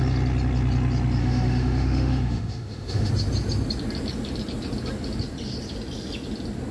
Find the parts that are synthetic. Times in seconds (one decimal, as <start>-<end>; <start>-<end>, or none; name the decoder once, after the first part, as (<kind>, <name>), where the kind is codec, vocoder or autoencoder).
1.2-3.1 (autoencoder, DAC-VAE)